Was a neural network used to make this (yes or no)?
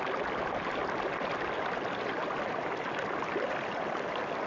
no